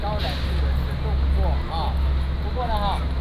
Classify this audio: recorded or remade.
recorded